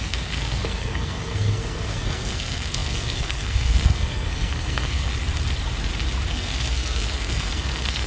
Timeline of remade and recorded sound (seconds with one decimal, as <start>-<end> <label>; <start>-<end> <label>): 0.0-5.1 remade; 5.1-6.3 recorded; 6.3-8.1 remade

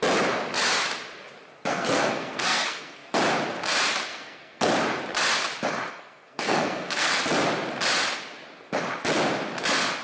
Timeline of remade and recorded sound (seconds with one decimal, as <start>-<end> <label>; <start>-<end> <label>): 0.0-1.7 recorded; 1.7-3.2 remade; 3.2-4.1 recorded; 4.1-4.7 remade; 4.7-5.9 recorded; 5.9-7.2 remade; 7.2-10.0 recorded

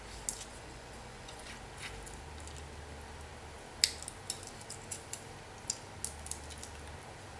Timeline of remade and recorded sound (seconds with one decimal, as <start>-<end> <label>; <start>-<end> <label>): 0.0-0.5 recorded; 0.5-1.5 remade; 1.5-7.4 recorded

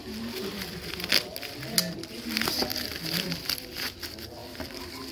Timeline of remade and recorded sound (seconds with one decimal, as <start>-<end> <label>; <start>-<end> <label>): 0.0-1.1 remade; 1.1-2.7 recorded; 2.7-3.9 remade; 3.9-5.1 recorded

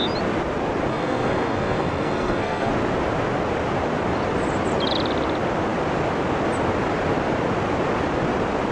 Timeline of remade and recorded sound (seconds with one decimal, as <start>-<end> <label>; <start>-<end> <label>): 0.0-0.9 recorded; 0.9-2.7 remade; 2.7-8.7 recorded

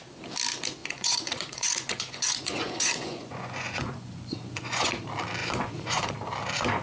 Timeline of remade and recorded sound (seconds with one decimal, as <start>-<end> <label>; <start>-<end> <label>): 0.0-0.8 recorded; 0.8-4.9 remade; 4.9-5.4 recorded; 5.4-6.1 remade; 6.1-6.8 recorded

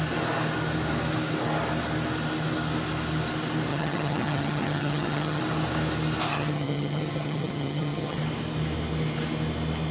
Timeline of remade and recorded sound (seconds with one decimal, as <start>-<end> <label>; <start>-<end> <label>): 0.0-3.7 recorded; 3.7-5.4 remade; 5.4-6.3 recorded; 6.3-8.2 remade; 8.2-9.9 recorded